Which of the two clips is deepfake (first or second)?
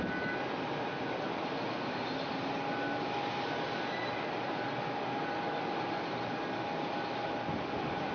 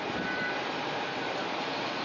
second